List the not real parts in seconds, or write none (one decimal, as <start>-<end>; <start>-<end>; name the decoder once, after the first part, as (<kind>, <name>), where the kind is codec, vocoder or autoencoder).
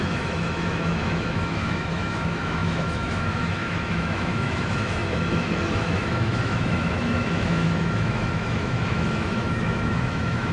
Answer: 0.0-10.5 (autoencoder, DAC-VAE)